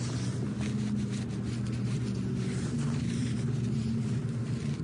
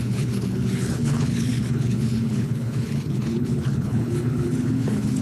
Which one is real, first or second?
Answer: first